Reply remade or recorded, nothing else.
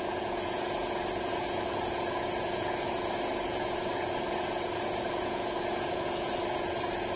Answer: remade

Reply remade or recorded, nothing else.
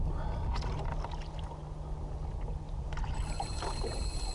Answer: recorded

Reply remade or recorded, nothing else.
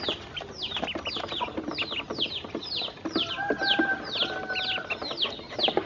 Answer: recorded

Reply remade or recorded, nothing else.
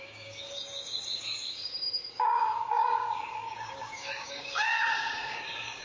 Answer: remade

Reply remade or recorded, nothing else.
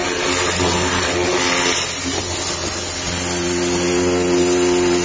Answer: recorded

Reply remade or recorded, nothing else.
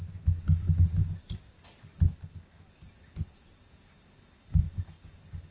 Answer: recorded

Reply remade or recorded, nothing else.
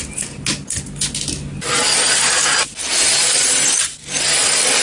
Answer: recorded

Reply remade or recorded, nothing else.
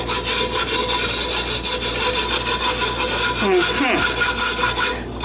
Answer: recorded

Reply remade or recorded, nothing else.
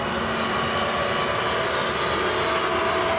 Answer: recorded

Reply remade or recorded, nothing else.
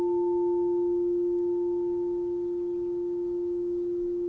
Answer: recorded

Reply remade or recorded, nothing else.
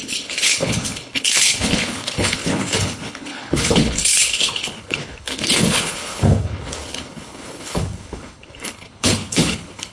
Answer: remade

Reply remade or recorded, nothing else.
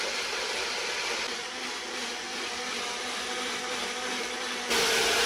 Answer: recorded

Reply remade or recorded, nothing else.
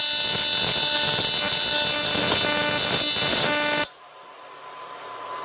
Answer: recorded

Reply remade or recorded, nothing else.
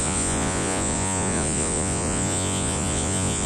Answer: remade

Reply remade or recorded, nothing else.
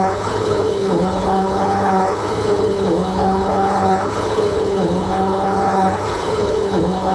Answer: remade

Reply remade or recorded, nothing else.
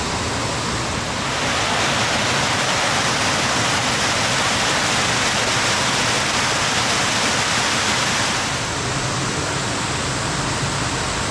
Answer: recorded